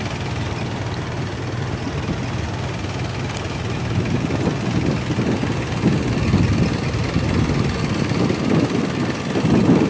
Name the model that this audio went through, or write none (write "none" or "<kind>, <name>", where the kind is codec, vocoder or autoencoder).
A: none